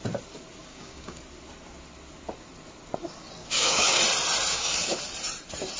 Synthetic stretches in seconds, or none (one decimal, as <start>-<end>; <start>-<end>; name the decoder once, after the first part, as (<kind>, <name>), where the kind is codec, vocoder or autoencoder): 0.7-1.2 (codec, DAC); 3.4-4.0; 4.5-5.0